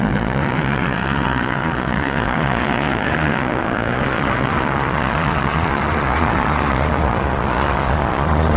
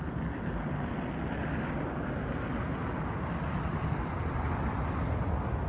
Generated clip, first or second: first